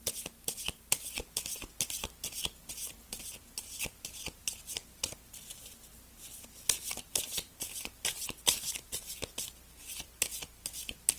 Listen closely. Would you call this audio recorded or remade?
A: recorded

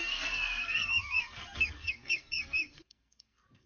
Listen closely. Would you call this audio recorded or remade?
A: remade